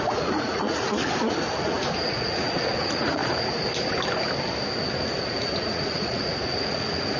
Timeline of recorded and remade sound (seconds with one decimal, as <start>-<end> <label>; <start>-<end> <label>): 0.0-1.0 remade; 1.0-1.6 recorded; 1.6-3.2 remade; 3.2-5.3 recorded; 5.3-7.2 remade